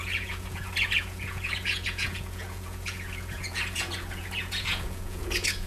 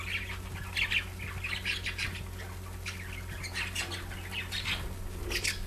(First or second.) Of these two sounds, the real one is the second